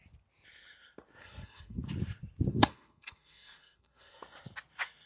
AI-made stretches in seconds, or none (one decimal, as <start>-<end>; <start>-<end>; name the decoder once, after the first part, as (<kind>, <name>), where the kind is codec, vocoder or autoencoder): 1.2-1.8 (codec, SNAC); 2.5-4.2